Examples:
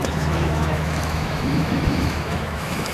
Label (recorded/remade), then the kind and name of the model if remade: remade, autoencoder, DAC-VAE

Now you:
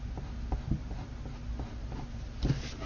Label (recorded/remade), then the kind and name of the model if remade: recorded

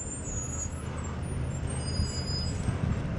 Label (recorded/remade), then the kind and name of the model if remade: recorded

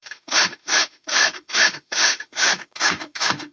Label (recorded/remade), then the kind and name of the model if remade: remade, autoencoder, DAC-VAE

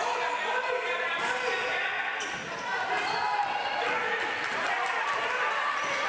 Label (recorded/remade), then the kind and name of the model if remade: recorded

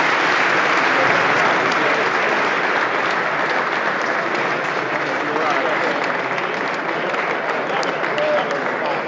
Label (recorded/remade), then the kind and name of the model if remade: recorded